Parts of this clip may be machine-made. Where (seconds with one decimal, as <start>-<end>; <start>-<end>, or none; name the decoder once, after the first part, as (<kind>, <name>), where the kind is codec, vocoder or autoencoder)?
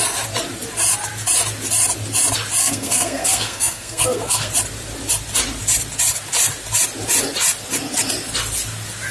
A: 2.6-4.5 (codec, SNAC)